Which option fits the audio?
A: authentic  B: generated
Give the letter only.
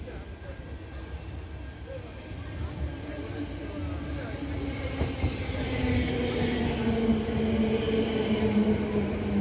A